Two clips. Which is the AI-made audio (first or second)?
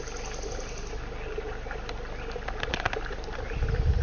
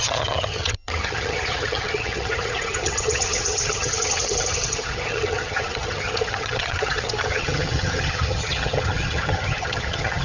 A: second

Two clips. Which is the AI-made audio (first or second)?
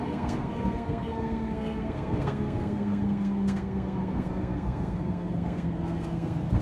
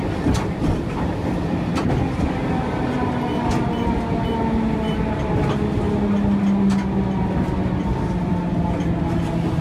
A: first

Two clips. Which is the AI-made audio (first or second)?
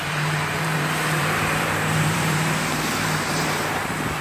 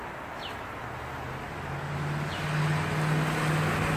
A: first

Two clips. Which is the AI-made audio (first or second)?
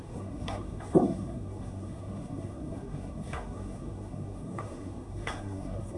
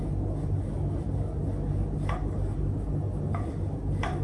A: first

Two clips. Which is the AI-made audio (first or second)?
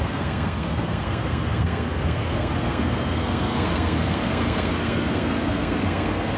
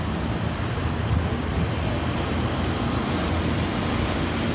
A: first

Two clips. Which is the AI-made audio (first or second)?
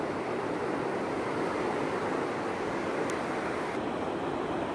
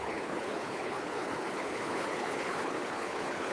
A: second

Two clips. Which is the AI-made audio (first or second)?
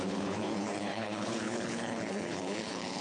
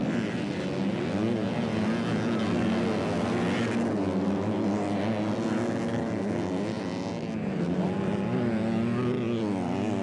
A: first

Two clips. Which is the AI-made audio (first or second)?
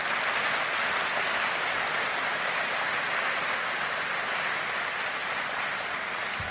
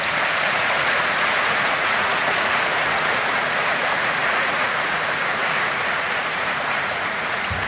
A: second